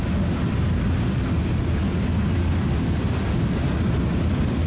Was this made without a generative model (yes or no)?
yes